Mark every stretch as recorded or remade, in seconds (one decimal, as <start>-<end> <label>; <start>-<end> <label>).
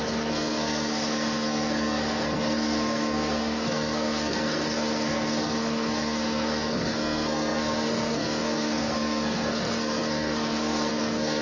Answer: 0.0-11.4 remade